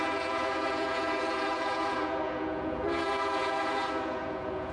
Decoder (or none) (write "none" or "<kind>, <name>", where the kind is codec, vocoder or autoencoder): vocoder, Vocos